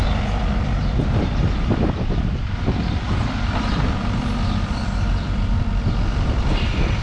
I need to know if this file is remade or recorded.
remade